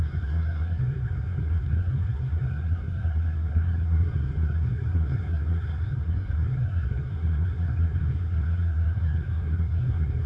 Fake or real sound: fake